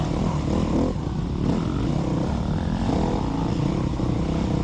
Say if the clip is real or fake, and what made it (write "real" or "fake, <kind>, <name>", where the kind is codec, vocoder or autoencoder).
real